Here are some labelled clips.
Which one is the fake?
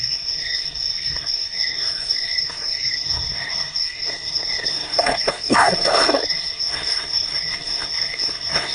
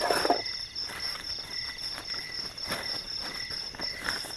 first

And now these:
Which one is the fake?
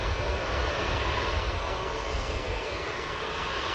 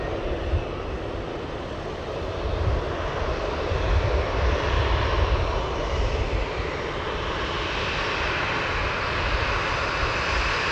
first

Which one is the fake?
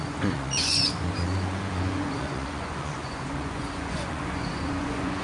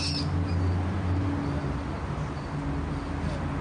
first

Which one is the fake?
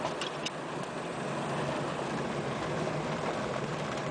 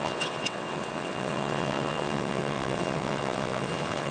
second